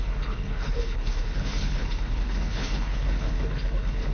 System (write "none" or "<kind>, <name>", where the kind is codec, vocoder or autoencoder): codec, HILCodec